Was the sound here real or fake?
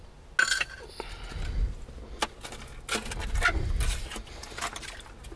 real